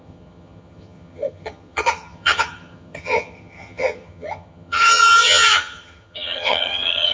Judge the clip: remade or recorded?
remade